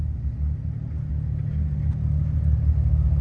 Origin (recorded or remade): recorded